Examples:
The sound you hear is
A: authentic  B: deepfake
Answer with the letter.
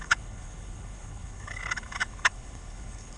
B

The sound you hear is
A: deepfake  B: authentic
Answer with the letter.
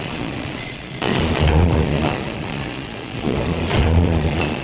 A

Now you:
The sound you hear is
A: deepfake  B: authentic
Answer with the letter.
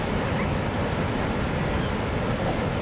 B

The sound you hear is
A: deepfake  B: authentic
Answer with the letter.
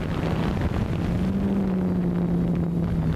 B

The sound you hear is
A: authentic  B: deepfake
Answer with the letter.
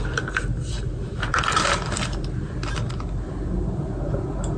A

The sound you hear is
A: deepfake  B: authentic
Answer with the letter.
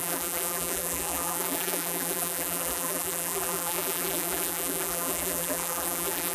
A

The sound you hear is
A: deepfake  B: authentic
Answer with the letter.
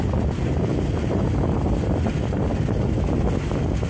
B